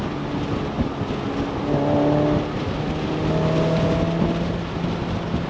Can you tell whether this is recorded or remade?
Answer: recorded